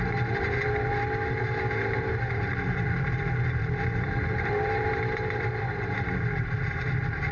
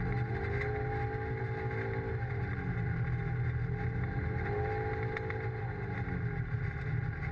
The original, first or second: second